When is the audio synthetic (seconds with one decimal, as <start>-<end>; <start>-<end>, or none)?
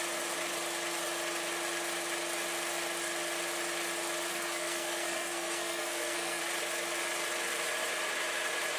4.3-6.4